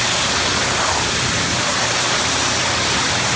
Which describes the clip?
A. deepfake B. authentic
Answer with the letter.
A